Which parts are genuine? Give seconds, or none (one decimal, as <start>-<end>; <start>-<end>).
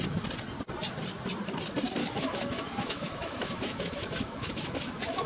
0.0-2.0